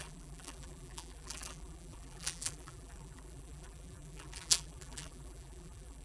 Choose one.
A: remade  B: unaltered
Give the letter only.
A